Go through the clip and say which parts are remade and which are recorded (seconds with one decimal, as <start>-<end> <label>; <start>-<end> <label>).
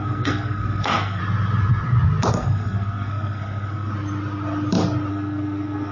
0.0-1.2 remade; 1.2-2.3 recorded; 2.3-3.9 remade; 3.9-5.1 recorded; 5.1-5.9 remade